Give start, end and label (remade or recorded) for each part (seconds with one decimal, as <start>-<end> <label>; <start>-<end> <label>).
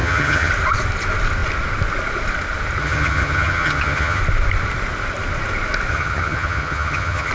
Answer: 0.0-0.5 remade; 0.5-2.8 recorded; 2.8-4.2 remade; 4.2-5.9 recorded; 5.9-7.3 remade